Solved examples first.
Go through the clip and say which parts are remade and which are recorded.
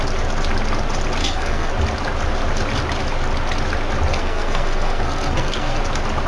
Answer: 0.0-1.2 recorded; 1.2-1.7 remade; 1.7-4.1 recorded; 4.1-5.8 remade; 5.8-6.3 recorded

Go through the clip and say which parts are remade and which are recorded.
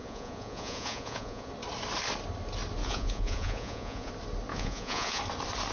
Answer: 0.0-1.5 remade; 1.5-2.8 recorded; 2.8-4.1 remade; 4.1-4.5 recorded; 4.5-5.2 remade; 5.2-5.7 recorded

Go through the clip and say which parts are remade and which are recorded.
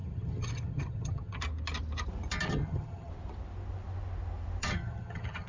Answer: 0.0-1.4 remade; 1.4-2.5 recorded; 2.5-3.1 remade; 3.1-4.6 recorded; 4.6-5.5 remade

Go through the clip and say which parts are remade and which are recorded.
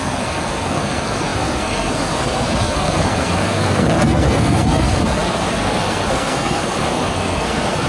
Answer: 0.0-7.9 remade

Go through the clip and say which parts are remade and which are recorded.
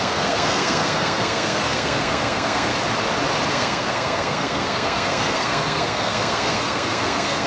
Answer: 0.0-2.7 remade; 2.7-3.5 recorded; 3.5-7.5 remade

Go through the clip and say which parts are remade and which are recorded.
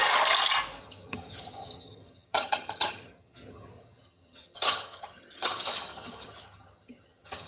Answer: 0.0-0.8 recorded; 0.8-7.5 remade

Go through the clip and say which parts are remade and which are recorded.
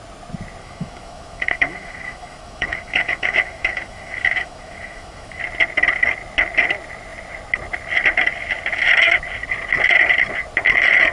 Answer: 0.0-0.6 recorded; 0.6-5.4 remade; 5.4-11.1 recorded